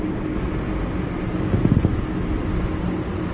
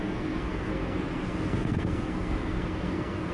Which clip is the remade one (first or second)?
second